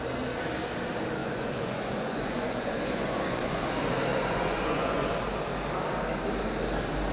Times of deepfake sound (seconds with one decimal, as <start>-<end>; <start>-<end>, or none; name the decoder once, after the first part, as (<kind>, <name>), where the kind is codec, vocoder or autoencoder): 1.2-3.6 (vocoder, Vocos); 4.1-5.1